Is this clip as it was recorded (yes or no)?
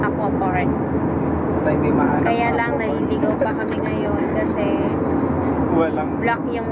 yes